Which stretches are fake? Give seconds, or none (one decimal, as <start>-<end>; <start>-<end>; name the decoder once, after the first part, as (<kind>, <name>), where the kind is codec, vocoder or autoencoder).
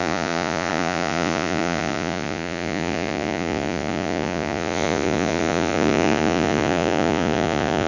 0.0-7.9 (vocoder, Vocos)